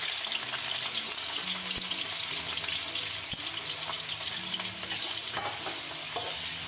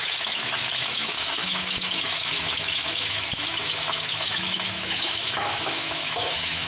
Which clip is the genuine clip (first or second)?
first